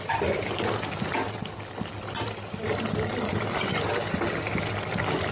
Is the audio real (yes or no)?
yes